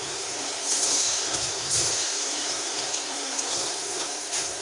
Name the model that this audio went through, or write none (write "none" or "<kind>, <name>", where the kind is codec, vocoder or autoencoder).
codec, SNAC